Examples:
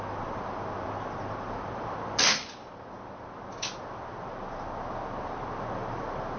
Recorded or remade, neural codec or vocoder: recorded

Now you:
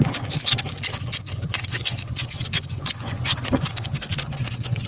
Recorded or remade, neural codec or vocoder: remade, vocoder, Vocos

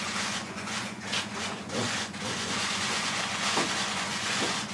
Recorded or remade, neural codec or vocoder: remade, vocoder, Vocos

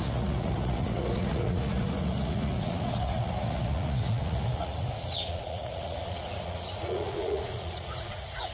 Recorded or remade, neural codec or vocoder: remade, vocoder, Vocos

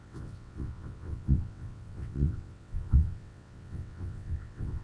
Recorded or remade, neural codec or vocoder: remade, vocoder, WaveNeXt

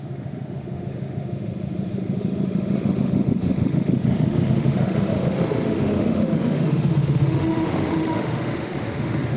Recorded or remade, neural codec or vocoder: remade, autoencoder, DAC-VAE